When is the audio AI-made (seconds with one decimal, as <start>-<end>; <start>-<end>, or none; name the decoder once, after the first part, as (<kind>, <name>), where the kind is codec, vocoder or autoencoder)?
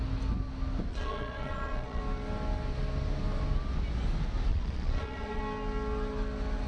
0.9-2.0 (vocoder, Vocos); 4.5-5.4